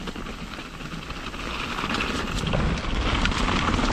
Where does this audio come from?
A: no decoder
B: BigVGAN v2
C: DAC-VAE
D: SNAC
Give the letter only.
A